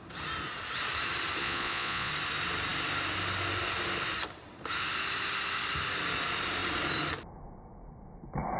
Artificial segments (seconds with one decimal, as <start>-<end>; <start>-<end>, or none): 1.4-2.1